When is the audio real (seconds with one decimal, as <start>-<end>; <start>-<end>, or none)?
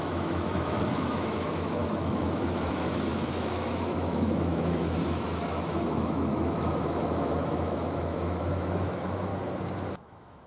9.3-9.9